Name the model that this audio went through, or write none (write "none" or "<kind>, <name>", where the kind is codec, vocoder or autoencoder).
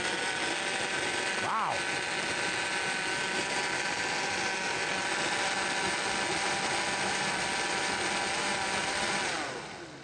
none